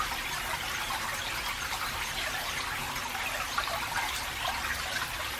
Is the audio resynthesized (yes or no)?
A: no